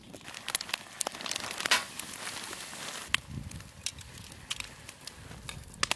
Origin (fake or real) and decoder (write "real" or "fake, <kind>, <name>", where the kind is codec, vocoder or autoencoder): real